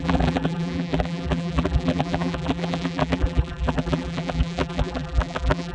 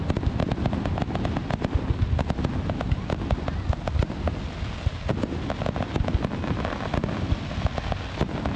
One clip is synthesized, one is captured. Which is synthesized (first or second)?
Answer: first